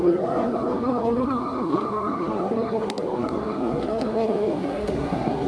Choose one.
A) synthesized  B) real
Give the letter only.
A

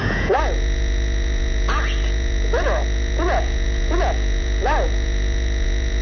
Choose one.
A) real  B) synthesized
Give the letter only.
B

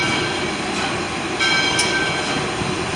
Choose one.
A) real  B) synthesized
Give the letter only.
A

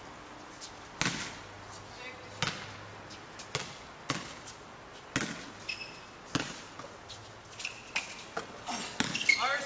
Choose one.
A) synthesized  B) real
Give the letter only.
B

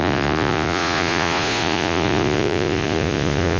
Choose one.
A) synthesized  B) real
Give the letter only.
A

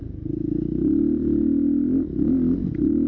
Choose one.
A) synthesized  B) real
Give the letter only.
B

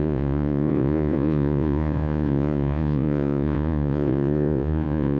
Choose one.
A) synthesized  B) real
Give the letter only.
A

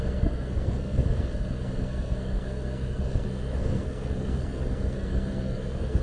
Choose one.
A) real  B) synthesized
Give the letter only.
B